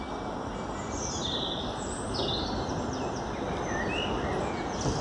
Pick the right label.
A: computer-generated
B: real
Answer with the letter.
B